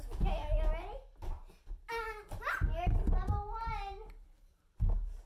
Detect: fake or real real